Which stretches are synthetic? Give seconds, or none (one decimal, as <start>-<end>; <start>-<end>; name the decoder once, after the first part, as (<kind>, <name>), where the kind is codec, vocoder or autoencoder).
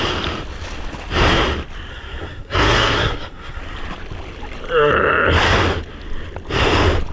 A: 1.9-3.6 (codec, SNAC)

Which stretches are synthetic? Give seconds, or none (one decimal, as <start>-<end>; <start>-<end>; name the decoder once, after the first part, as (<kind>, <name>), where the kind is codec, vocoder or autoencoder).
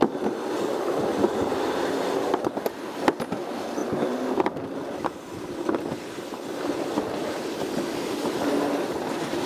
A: none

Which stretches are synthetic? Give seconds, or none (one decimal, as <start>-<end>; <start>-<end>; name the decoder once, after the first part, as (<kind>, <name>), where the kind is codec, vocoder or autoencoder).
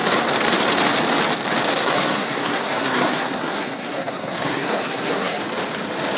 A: 1.7-5.4 (codec, SNAC)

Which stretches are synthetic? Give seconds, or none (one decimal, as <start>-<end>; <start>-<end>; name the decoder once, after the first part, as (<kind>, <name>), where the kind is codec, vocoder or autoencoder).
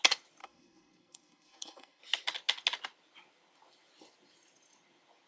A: 0.4-2.0 (codec, SNAC)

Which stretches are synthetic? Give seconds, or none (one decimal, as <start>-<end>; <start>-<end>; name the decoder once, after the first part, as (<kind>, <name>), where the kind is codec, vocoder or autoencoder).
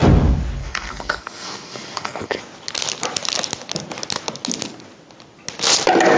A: 0.6-2.4 (codec, SNAC)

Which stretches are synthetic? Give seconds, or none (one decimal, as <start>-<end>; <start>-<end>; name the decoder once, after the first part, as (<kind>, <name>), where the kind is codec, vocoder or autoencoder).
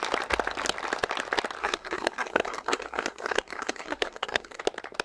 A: 1.6-4.6 (codec, SNAC)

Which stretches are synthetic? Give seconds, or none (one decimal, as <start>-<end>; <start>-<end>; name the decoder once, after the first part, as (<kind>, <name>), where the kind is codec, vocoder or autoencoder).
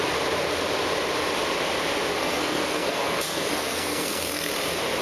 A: 2.2-4.5 (codec, SNAC)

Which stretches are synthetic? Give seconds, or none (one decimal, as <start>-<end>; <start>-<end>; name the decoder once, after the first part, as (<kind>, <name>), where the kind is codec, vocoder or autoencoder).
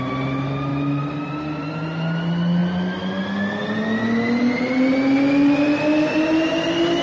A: none